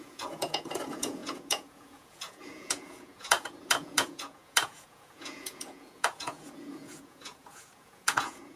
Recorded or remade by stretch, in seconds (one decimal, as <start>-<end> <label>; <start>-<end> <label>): 0.0-8.6 remade